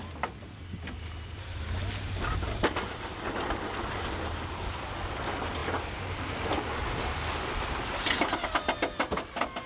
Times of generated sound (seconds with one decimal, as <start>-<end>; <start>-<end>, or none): none